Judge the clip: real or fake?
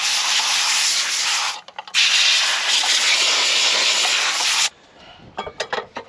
real